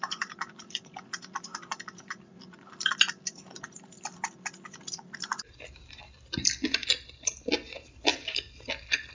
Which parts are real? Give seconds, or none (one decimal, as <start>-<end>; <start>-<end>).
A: none